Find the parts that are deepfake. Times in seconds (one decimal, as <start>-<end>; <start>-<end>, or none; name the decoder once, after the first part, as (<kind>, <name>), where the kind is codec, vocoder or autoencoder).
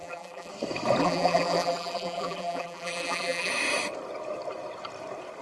0.0-0.5 (vocoder, BigVGAN v2); 1.0-3.5